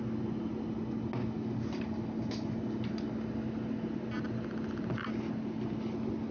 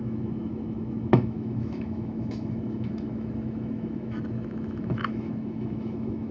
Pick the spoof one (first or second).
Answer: second